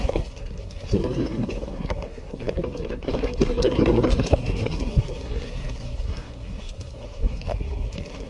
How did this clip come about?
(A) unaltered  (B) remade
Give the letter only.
B